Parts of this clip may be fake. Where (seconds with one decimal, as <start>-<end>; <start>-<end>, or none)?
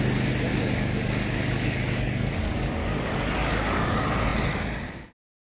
0.5-3.9